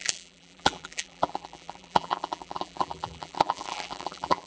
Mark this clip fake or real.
fake